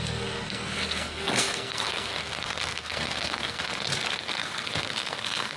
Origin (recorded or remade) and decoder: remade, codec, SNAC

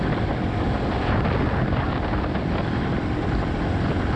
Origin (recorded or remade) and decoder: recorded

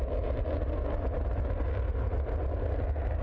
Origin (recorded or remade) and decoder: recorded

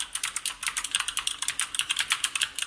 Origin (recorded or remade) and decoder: remade, vocoder, BigVGAN v2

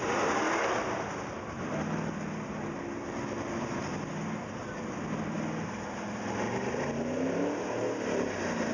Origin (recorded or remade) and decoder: recorded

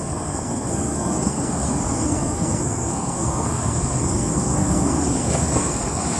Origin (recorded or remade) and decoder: remade, codec, SNAC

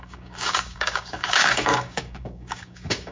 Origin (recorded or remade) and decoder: remade, codec, DAC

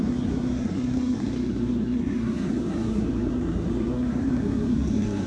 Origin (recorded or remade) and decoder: remade, codec, SNAC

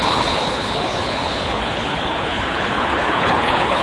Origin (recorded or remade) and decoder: remade, codec, HILCodec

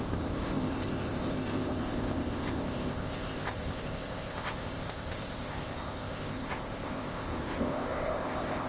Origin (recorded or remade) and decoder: remade, codec, ZipCodec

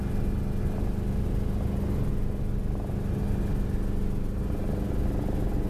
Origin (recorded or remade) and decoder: recorded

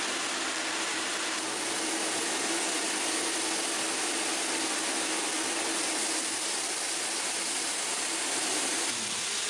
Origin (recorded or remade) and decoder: recorded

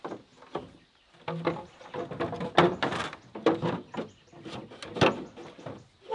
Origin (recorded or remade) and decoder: recorded